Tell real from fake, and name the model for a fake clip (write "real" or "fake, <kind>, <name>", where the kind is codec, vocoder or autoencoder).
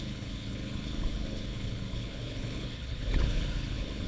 fake, codec, HILCodec